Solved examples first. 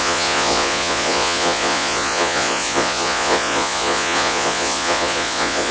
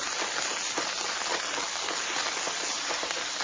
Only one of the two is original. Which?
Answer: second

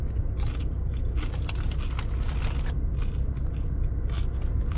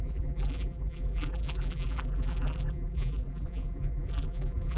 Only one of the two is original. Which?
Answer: first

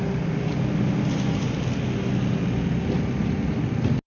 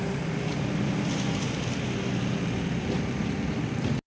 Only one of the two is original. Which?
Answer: first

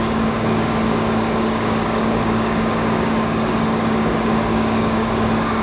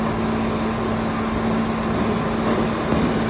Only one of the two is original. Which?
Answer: second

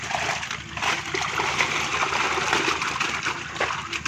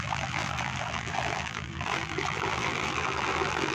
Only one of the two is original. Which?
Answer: first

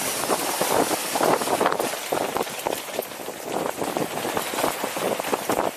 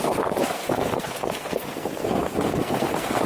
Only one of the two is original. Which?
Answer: first